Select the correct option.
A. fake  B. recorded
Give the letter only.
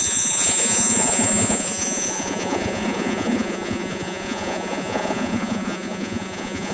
A